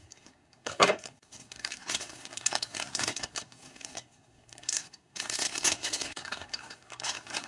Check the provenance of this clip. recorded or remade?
remade